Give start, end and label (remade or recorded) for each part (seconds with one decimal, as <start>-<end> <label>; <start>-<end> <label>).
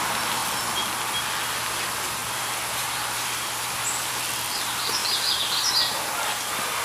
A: 0.0-6.8 recorded